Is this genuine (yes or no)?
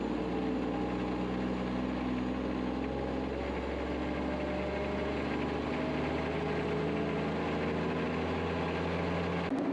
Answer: yes